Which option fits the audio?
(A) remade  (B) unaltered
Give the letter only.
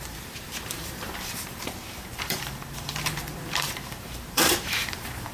A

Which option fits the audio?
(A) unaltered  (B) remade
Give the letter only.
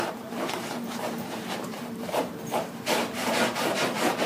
B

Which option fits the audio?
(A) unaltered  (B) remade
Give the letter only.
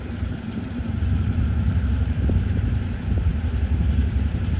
B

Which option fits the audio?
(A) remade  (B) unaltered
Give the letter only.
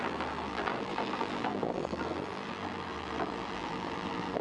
A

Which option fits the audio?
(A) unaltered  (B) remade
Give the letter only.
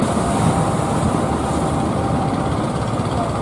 B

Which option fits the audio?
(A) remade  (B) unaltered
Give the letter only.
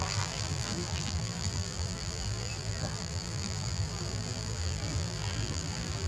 A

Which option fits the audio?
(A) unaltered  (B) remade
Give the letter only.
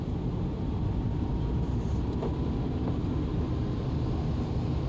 B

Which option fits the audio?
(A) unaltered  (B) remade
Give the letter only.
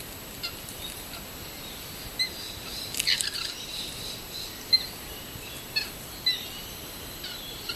A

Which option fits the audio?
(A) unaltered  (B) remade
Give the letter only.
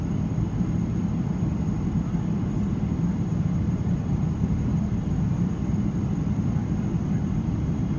B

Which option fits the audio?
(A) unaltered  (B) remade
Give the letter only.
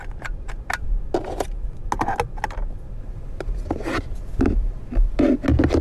A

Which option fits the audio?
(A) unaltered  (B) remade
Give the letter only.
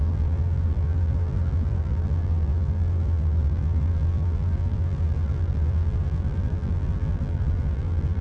B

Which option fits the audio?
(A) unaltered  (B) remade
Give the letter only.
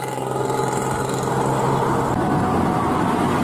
A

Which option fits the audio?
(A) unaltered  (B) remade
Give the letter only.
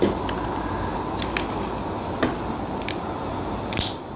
A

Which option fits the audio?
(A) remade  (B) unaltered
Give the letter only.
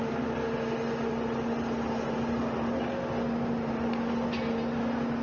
B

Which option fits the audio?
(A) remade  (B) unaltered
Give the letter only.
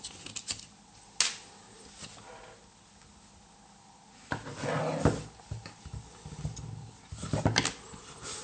B